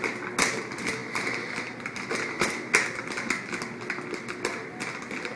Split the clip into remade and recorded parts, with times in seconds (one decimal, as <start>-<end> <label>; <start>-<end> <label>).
0.0-5.4 recorded